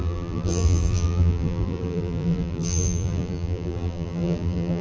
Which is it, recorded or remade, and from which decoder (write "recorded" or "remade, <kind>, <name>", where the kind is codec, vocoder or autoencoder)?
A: remade, vocoder, BigVGAN v2